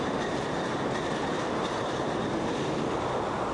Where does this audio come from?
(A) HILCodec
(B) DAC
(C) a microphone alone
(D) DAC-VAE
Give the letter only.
C